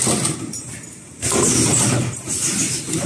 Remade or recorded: recorded